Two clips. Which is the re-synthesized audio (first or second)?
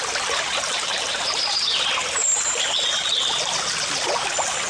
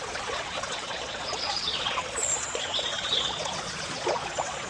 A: second